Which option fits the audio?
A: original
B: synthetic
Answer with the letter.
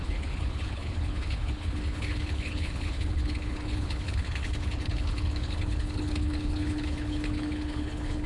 B